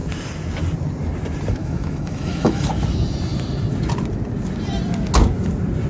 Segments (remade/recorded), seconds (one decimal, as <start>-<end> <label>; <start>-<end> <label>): 0.0-1.6 recorded; 1.6-2.7 remade; 2.7-5.9 recorded